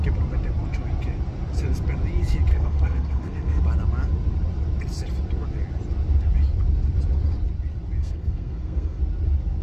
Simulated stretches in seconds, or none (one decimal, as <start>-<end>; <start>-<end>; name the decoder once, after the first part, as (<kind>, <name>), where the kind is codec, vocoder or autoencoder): 2.5-3.6 (codec, SNAC); 8.0-9.0